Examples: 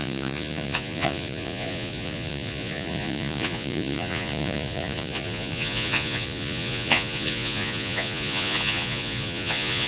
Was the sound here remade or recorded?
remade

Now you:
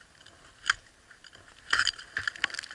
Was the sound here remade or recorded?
recorded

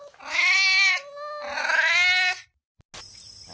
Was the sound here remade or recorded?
recorded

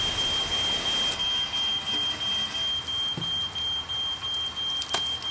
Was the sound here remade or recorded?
recorded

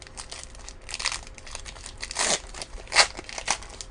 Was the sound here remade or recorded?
recorded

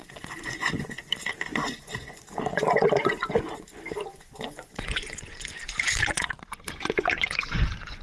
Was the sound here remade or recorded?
remade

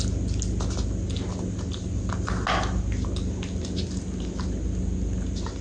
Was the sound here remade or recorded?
recorded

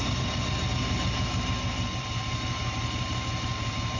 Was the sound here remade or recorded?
recorded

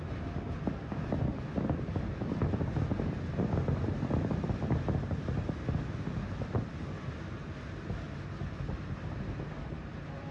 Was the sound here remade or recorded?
recorded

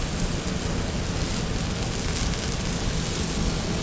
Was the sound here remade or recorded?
recorded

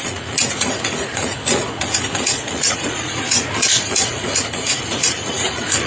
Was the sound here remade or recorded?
remade